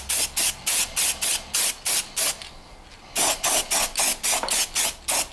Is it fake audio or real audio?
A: real